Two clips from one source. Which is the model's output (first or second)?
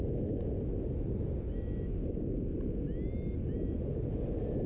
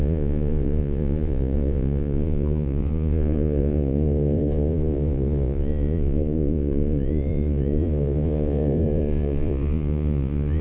second